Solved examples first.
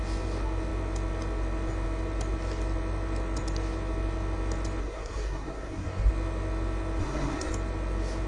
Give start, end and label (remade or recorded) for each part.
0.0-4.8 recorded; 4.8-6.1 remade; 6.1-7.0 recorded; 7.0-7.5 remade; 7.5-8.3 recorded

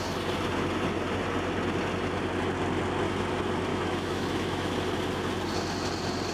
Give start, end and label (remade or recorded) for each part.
0.0-3.7 recorded; 3.7-4.7 remade; 4.7-6.3 recorded

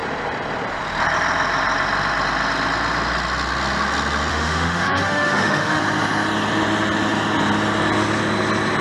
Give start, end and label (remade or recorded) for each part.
0.0-4.3 recorded; 4.3-5.8 remade; 5.8-8.8 recorded